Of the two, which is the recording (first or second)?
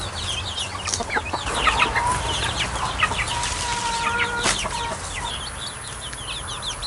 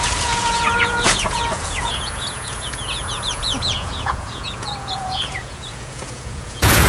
first